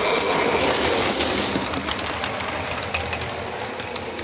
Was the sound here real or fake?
real